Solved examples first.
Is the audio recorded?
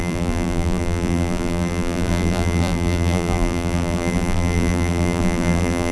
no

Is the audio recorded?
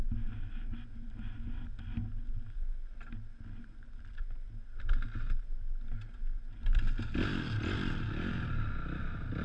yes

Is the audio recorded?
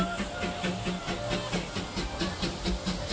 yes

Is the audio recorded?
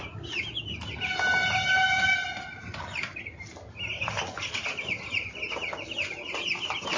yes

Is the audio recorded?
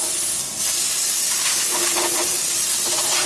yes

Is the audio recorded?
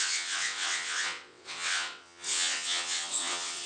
no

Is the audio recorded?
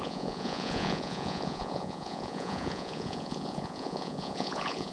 no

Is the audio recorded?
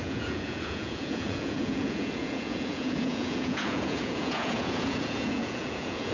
no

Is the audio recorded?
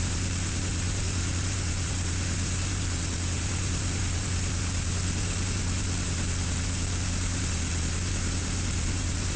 no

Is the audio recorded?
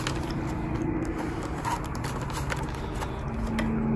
yes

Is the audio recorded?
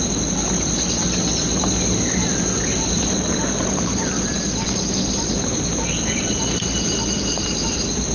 yes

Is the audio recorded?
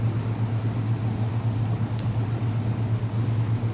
yes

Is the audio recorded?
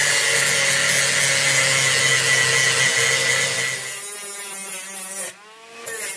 yes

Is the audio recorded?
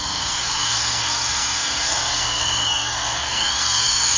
no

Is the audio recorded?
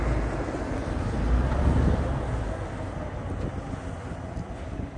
yes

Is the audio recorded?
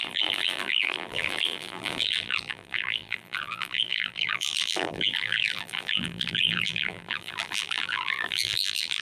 no